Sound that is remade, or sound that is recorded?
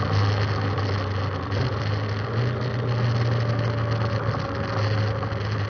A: recorded